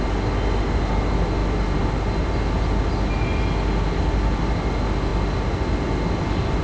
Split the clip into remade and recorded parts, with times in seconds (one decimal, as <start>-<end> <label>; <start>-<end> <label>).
0.0-6.6 recorded